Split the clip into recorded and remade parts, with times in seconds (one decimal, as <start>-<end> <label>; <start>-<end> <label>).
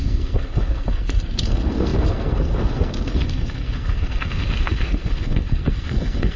0.0-6.4 remade